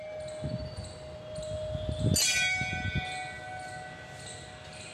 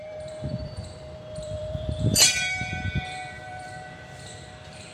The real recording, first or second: first